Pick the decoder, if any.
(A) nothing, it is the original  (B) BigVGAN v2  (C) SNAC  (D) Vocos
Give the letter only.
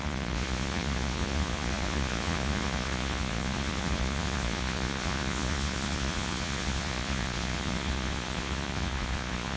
D